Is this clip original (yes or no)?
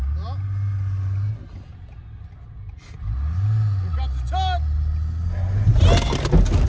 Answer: yes